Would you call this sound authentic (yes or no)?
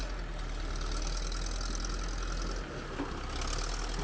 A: yes